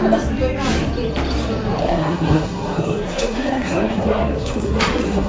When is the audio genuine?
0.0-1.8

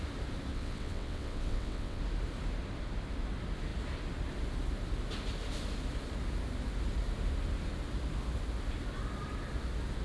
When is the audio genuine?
0.0-0.5; 2.0-10.0

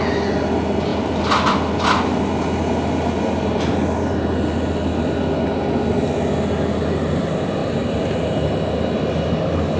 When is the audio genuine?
0.0-7.6; 8.1-9.8

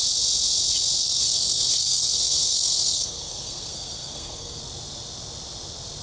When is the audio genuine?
0.0-1.0; 4.6-6.0

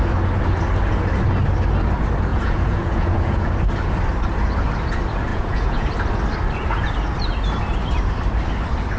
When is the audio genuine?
0.0-2.3; 3.5-5.3; 5.9-9.0

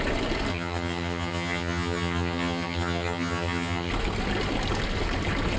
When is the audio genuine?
0.0-0.5; 3.9-5.6

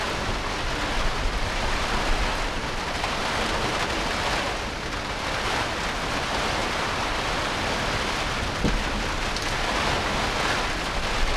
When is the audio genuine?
0.0-6.6; 8.2-11.4